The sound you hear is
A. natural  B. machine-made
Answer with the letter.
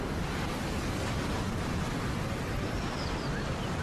A